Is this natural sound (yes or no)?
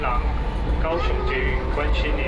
yes